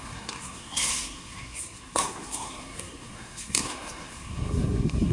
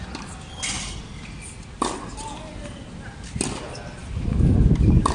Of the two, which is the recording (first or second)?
second